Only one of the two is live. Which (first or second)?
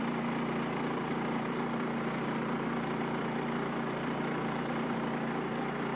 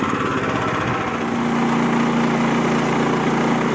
second